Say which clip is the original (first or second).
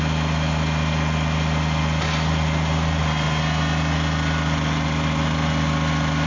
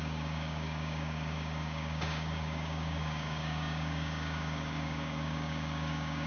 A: first